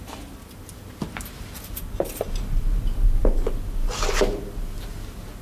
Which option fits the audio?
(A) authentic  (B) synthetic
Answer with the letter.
A